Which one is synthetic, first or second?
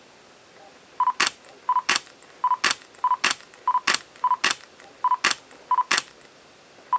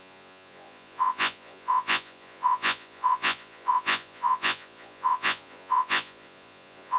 second